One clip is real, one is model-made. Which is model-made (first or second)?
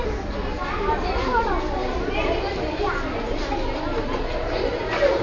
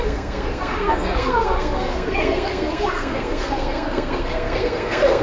second